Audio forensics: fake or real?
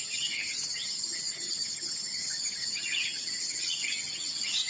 fake